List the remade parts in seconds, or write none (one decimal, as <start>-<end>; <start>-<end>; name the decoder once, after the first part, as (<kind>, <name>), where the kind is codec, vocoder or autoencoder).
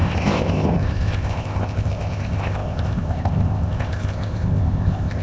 0.0-5.2 (codec, ZipCodec)